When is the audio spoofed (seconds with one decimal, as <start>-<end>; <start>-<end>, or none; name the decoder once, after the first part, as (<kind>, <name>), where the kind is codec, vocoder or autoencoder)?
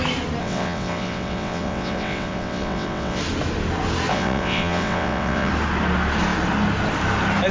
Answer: 0.4-3.2 (vocoder, WaveNeXt); 4.1-5.5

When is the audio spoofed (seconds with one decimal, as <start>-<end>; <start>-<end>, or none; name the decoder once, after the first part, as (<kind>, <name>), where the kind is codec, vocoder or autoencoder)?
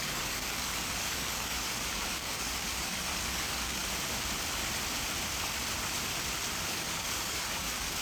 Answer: 0.0-3.8 (codec, DAC); 6.7-8.0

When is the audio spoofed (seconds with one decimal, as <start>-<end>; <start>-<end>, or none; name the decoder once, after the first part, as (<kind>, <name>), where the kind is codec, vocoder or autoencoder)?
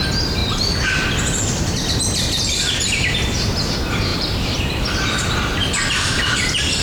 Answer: 4.1-4.6 (vocoder, BigVGAN v2)